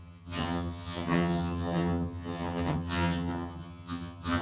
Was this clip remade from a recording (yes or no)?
yes